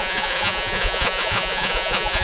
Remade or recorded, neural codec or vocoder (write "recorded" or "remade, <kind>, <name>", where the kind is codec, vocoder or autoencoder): remade, vocoder, Vocos